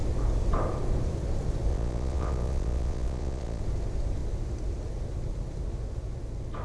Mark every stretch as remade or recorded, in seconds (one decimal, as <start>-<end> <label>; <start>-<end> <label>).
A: 0.0-1.7 recorded; 1.7-3.6 remade; 3.6-6.6 recorded